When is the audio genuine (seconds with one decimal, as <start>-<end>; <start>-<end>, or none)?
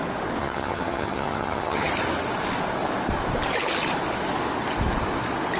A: 0.0-0.4; 1.9-5.6